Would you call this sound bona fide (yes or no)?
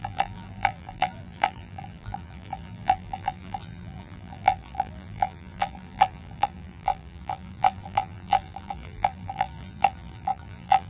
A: no